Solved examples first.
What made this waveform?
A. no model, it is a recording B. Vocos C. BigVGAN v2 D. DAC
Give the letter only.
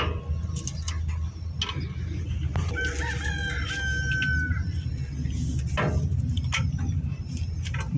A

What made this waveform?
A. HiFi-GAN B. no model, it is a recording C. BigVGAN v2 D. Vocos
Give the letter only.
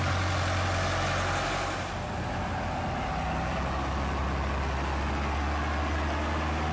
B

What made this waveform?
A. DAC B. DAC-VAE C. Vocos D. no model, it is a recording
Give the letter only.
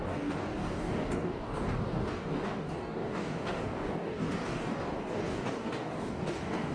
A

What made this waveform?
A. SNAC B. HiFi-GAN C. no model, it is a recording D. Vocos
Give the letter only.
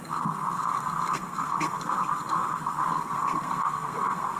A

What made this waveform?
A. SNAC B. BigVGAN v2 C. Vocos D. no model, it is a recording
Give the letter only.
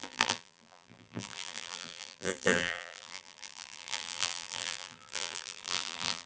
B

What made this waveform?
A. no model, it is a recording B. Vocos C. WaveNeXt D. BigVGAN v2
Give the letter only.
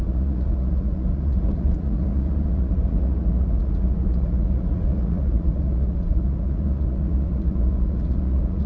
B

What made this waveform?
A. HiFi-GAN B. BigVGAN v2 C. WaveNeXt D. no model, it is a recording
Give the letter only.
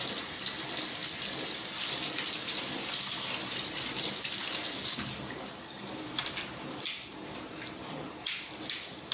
D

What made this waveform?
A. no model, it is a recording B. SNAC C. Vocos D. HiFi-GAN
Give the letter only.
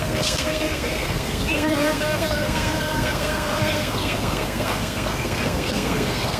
B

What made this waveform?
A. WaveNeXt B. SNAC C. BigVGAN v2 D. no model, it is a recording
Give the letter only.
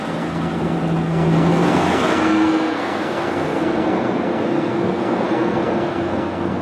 B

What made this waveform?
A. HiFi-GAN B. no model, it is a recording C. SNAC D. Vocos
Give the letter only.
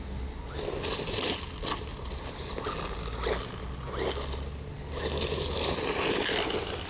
B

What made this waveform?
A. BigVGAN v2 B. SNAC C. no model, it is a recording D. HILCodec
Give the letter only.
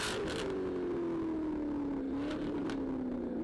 C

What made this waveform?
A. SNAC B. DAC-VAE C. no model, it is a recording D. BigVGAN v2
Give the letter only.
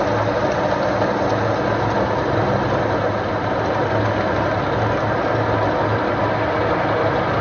C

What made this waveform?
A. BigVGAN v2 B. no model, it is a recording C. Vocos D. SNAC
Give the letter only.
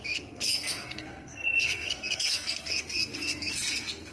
D